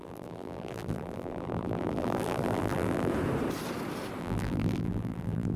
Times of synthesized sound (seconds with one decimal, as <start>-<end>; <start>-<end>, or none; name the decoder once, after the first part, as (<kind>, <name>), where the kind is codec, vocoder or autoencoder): 0.0-3.1 (vocoder, BigVGAN v2); 4.2-5.6